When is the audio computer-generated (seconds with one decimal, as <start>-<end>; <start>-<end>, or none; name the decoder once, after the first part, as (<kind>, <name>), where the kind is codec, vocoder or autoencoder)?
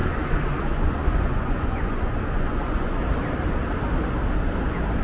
0.0-3.0 (vocoder, Vocos)